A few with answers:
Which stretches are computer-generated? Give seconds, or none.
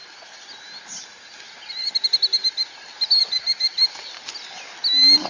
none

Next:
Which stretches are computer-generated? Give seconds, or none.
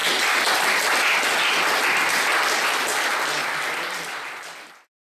none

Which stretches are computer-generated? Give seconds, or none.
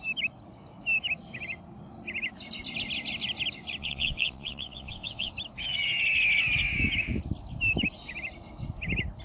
3.8-5.3 (vocoder, WaveNeXt)